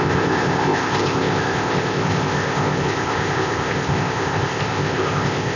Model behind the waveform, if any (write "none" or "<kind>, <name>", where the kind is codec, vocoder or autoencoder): codec, ZipCodec